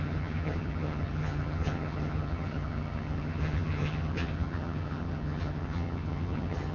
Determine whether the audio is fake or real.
fake